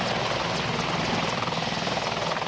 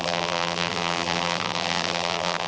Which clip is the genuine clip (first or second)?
first